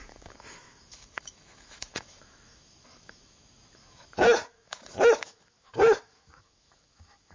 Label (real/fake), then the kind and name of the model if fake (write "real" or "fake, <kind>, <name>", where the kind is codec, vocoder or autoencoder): fake, autoencoder, DAC-VAE